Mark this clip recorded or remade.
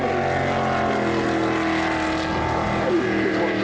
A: recorded